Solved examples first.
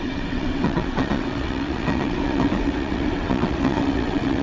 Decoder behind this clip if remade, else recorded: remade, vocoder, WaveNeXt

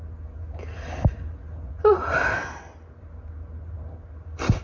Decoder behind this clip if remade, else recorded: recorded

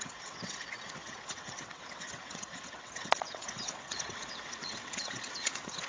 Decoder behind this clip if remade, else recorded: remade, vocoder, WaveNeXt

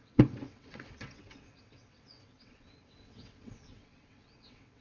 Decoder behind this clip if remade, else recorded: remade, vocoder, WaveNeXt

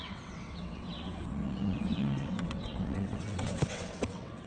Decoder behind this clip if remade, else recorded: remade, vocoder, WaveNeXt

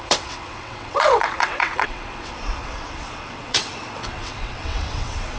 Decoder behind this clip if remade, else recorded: remade, vocoder, WaveNeXt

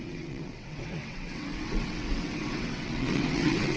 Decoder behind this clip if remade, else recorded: remade, vocoder, WaveNeXt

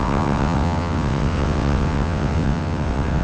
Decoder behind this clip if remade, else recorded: remade, vocoder, WaveNeXt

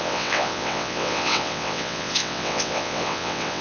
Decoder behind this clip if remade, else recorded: remade, vocoder, WaveNeXt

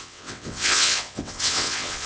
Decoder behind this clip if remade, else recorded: remade, vocoder, WaveNeXt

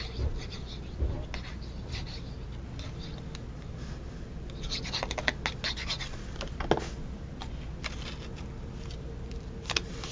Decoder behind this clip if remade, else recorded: recorded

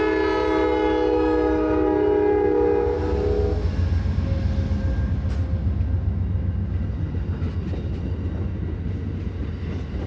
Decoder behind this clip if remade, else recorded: recorded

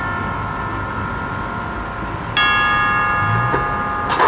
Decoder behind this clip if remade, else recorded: recorded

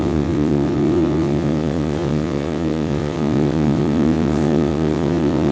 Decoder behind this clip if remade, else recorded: remade, vocoder, WaveNeXt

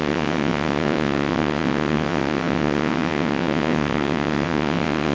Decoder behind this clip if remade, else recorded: remade, vocoder, WaveNeXt